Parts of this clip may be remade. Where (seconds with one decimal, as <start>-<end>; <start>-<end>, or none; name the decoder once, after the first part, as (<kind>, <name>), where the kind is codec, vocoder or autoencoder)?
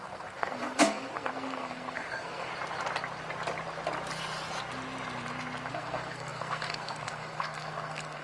0.0-2.5 (codec, SNAC); 5.7-8.2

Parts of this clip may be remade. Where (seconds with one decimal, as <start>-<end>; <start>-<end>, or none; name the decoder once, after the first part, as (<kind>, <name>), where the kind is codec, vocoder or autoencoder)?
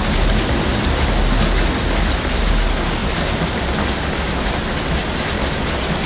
none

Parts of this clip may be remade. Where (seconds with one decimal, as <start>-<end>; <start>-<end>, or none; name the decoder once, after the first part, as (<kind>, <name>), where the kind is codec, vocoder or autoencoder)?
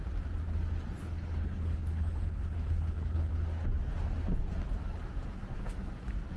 1.0-3.3 (codec, HILCodec)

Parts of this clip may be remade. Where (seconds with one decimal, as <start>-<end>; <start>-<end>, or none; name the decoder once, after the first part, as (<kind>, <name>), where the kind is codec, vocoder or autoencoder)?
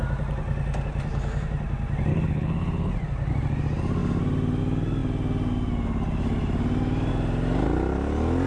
2.1-2.9 (codec, HILCodec)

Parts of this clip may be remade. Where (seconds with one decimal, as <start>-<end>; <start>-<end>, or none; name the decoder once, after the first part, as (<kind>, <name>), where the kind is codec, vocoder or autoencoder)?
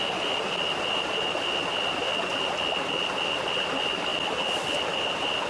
none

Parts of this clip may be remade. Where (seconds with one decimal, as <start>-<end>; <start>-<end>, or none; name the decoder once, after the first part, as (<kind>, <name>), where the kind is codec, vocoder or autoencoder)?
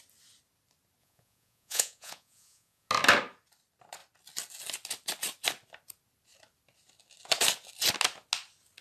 1.0-2.9 (vocoder, Vocos)